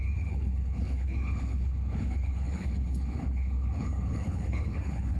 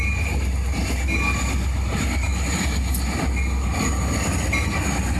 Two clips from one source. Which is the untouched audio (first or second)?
second